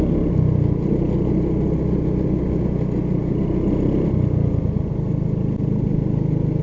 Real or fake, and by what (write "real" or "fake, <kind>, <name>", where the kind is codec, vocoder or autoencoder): real